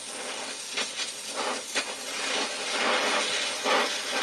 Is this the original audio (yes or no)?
yes